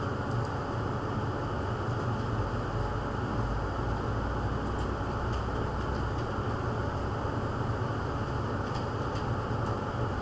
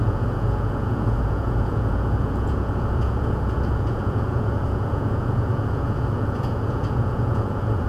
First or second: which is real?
first